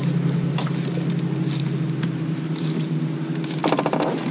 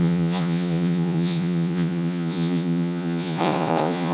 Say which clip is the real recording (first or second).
first